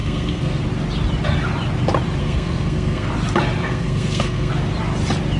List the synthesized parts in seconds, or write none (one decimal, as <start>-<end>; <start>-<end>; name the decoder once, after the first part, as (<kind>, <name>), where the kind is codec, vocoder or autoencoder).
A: 0.0-0.6 (codec, SNAC); 2.2-3.1; 3.6-4.5